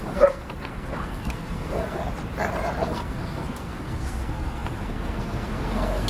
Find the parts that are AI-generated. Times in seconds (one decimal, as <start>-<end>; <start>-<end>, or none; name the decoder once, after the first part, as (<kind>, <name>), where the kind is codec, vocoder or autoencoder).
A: 0.0-2.0 (codec, SNAC); 2.8-6.1